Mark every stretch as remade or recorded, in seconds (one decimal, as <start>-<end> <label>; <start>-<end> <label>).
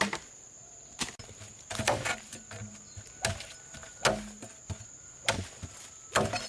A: 0.0-6.5 recorded